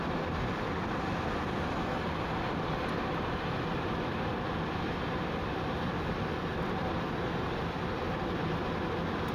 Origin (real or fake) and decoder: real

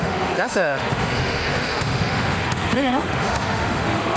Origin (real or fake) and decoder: fake, autoencoder, DAC-VAE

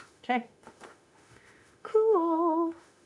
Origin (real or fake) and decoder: fake, autoencoder, DAC-VAE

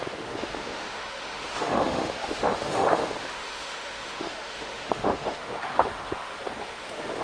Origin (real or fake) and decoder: fake, autoencoder, DAC-VAE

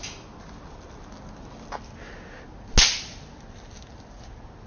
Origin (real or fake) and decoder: real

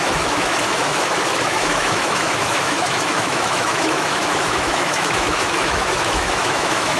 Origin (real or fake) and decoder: fake, autoencoder, DAC-VAE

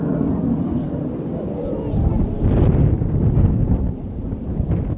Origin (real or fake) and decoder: real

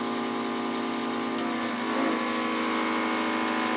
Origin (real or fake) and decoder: real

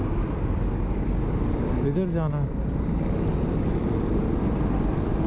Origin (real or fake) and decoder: real